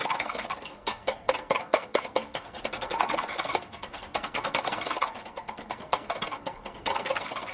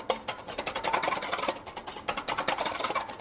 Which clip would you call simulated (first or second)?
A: first